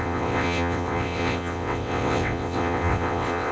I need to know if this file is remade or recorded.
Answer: remade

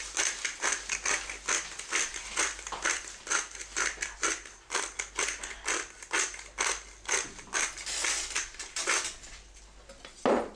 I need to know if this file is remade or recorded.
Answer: recorded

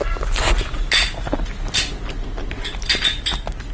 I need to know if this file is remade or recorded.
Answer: recorded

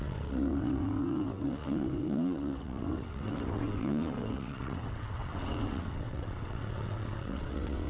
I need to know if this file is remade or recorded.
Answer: remade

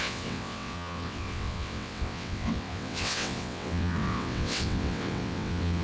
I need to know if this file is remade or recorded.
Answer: remade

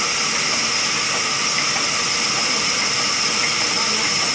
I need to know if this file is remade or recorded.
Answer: recorded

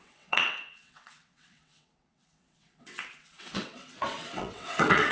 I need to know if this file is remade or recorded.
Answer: remade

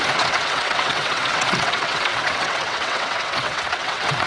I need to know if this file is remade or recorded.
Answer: remade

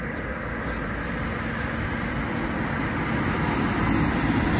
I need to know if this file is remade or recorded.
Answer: recorded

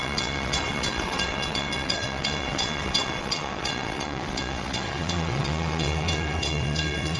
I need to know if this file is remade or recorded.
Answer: remade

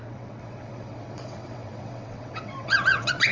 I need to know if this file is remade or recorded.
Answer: remade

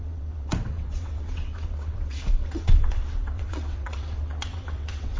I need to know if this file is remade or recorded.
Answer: remade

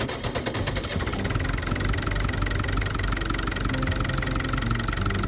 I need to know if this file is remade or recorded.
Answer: recorded